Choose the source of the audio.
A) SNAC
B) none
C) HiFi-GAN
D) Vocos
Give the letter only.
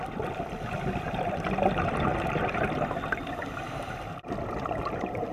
B